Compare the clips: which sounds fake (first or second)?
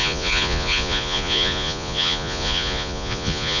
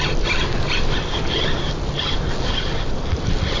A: first